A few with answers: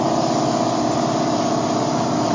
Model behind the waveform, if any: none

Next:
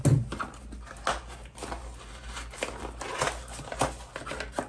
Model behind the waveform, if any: none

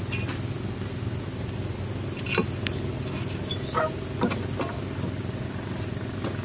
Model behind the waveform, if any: none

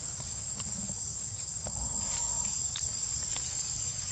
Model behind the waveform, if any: codec, DAC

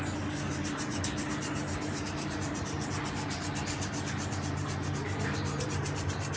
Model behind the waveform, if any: none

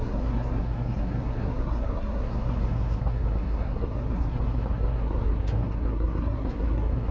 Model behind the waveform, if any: codec, SNAC